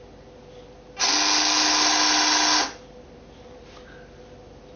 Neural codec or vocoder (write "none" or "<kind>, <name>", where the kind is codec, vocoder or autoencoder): none